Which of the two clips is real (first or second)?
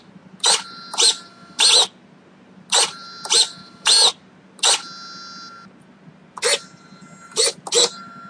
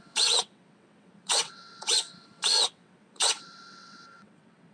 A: first